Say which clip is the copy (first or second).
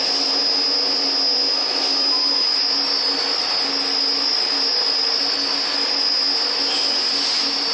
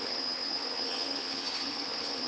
second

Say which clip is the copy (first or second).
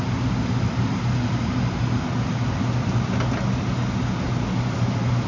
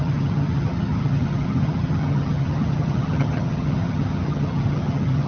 second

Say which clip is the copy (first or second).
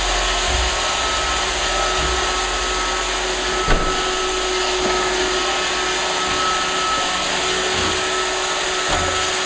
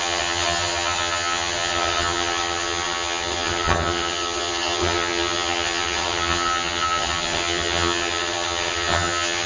second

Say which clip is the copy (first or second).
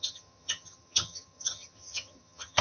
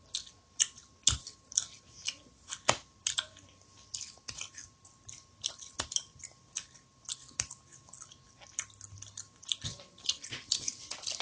first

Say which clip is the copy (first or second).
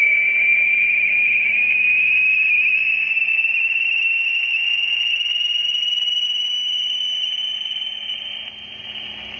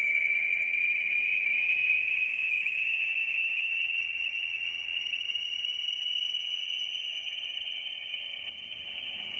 second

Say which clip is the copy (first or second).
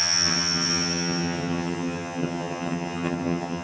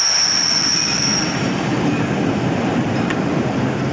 first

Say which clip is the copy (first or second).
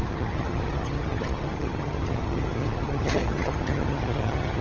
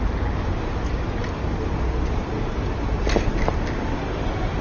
first